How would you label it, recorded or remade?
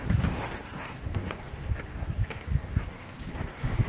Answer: remade